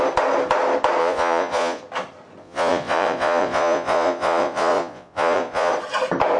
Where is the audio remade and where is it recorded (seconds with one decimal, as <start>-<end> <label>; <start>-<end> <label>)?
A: 0.0-1.0 recorded; 1.0-1.8 remade; 1.8-2.4 recorded; 2.4-5.7 remade; 5.7-6.4 recorded